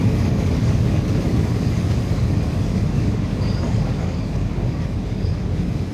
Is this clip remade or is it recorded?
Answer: remade